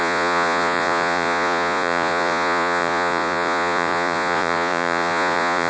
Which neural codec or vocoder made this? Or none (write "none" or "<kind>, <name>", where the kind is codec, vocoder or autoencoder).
vocoder, Vocos